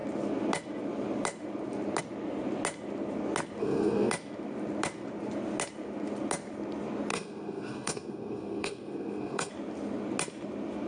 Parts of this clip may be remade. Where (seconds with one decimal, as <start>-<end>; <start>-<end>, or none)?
3.6-4.1; 7.1-9.5

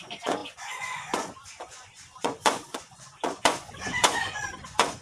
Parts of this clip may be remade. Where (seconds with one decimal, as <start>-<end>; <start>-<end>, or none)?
0.0-5.0

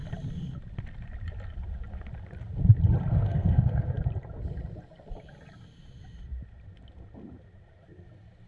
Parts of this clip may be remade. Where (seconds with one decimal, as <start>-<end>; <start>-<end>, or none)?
3.1-3.9

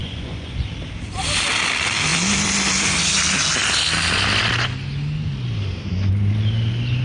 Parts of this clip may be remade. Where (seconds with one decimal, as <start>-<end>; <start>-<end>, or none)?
0.0-0.7

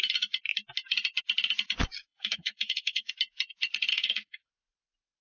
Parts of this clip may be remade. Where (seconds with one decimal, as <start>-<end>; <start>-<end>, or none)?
2.0-3.1; 3.9-4.5